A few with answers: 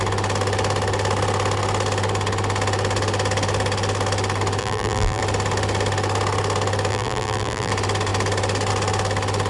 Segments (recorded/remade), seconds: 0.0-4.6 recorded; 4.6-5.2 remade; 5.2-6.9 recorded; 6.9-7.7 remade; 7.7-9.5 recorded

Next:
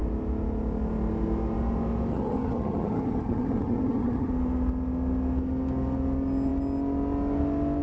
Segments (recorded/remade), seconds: 0.0-2.1 recorded; 2.1-4.3 remade; 4.3-7.8 recorded

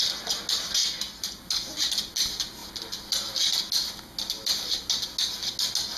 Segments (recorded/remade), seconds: 0.0-6.0 recorded

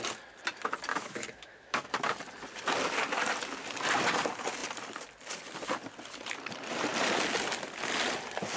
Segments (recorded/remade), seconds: 0.0-0.9 recorded; 0.9-2.0 remade; 2.0-8.6 recorded

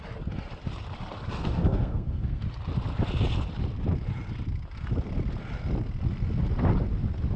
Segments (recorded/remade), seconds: 0.0-1.4 recorded; 1.4-2.4 remade; 2.4-7.4 recorded

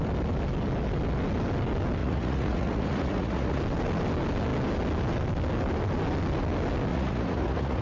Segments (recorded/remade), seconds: 0.0-2.0 recorded; 2.0-3.6 remade; 3.6-6.9 recorded; 6.9-7.8 remade